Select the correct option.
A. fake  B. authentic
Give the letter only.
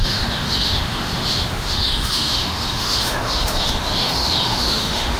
A